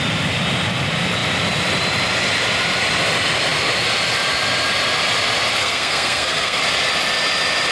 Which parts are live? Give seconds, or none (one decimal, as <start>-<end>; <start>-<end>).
0.0-5.6; 6.6-7.7